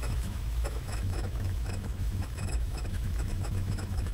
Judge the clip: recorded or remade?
remade